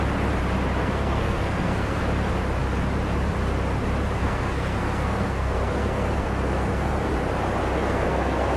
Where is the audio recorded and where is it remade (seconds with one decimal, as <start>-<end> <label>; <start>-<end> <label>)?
0.0-0.8 recorded; 0.8-2.0 remade; 2.0-4.2 recorded; 4.2-7.1 remade; 7.1-7.6 recorded; 7.6-8.6 remade